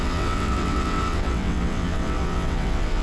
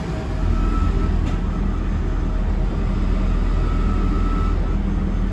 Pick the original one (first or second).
second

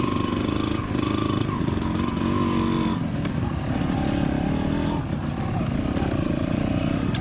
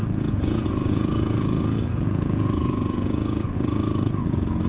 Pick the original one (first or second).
first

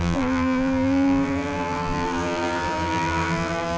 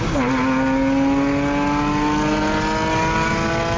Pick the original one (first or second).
second